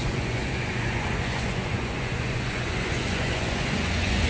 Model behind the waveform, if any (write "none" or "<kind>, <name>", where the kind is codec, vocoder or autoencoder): vocoder, Vocos